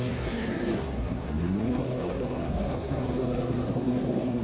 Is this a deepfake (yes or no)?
yes